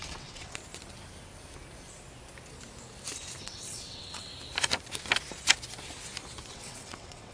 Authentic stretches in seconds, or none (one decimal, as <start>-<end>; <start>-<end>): 0.6-3.4; 4.3-6.5